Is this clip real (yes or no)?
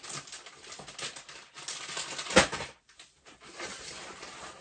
yes